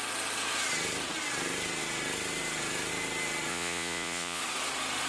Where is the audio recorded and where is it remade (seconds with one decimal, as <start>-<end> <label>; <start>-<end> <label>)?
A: 0.0-3.5 recorded; 3.5-4.4 remade; 4.4-5.1 recorded